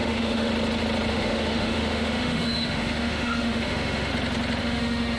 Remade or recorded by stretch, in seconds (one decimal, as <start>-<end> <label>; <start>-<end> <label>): 0.0-0.5 remade; 0.5-1.1 recorded; 1.1-4.1 remade; 4.1-4.6 recorded; 4.6-5.2 remade